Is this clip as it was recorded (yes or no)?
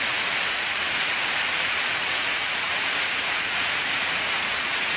no